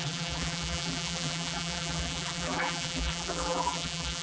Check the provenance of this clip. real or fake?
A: fake